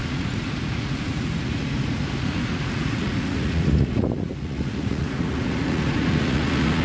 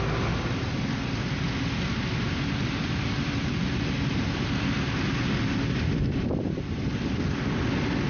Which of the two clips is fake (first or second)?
first